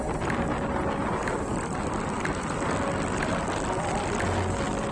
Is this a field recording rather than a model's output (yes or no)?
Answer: yes